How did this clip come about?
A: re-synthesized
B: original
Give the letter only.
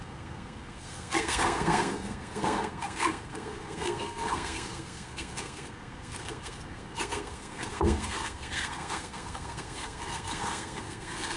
A